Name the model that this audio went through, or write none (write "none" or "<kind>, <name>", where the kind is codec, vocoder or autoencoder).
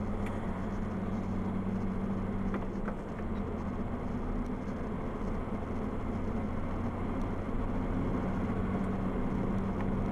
none